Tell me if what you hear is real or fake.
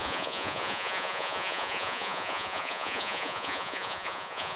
fake